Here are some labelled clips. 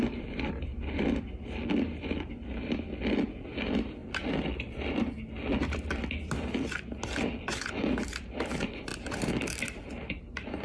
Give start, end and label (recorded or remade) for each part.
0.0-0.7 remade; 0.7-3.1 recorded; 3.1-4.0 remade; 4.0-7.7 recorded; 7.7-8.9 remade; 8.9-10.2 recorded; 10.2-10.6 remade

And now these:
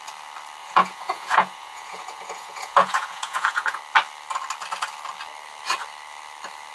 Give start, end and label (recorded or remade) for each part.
0.0-0.6 recorded; 0.6-3.8 remade; 3.8-6.7 recorded

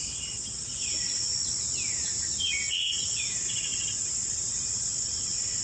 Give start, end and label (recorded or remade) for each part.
0.0-1.3 remade; 1.3-2.4 recorded; 2.4-5.6 remade